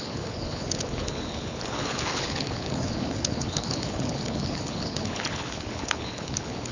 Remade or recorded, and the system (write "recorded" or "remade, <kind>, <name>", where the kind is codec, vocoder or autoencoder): remade, codec, HILCodec